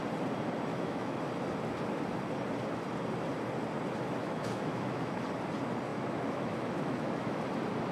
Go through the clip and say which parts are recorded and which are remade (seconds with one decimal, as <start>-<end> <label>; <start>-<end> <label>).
0.0-0.7 recorded; 0.7-1.2 remade; 1.2-4.2 recorded; 4.2-5.2 remade; 5.2-5.9 recorded; 5.9-7.4 remade; 7.4-7.9 recorded